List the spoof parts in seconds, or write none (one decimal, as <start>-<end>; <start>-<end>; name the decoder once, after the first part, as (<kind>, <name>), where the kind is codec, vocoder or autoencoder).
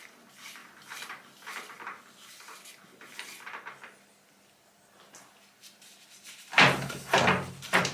none